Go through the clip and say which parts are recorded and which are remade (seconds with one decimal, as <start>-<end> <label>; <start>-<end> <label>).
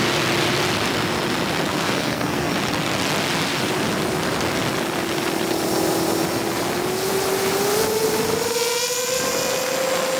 0.0-1.7 recorded; 1.7-2.5 remade; 2.5-10.2 recorded